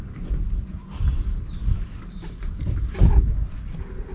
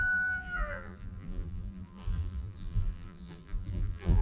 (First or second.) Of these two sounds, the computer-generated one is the second